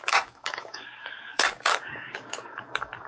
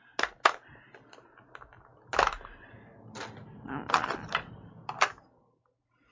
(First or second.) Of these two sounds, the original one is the second